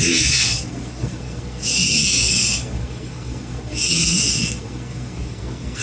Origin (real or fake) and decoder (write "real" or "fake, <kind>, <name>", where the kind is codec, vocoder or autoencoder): fake, codec, SNAC